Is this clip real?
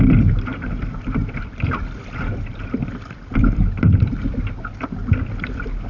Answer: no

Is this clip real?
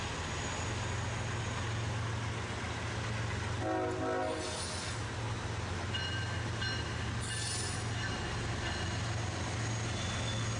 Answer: yes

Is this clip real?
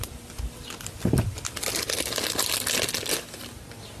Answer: yes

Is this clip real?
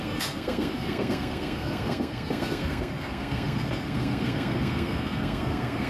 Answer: no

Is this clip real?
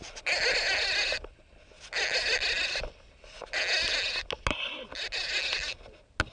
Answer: yes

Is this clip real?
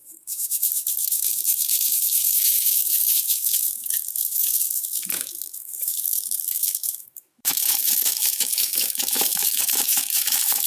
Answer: no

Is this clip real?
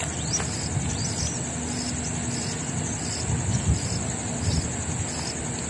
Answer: yes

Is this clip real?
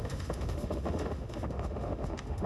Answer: no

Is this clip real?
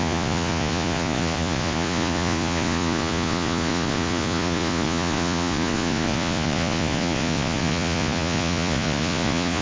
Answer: no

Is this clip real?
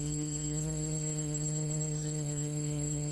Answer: no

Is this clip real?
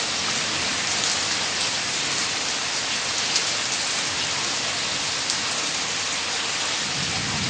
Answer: yes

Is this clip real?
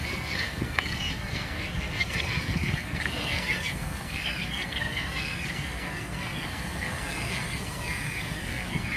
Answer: no